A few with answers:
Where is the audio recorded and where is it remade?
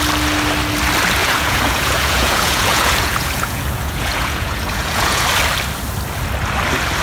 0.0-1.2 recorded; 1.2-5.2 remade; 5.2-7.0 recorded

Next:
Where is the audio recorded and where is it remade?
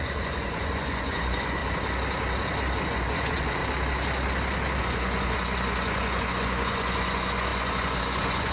0.0-1.6 remade; 1.6-2.9 recorded; 2.9-3.6 remade; 3.6-4.8 recorded; 4.8-8.5 remade